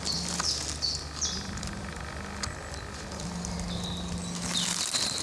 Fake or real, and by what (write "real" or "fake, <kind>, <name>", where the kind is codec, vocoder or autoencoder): real